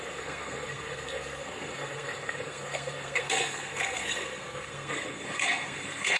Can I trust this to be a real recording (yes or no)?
no